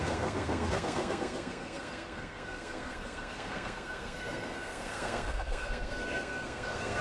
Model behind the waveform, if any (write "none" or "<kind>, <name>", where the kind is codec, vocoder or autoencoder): codec, SNAC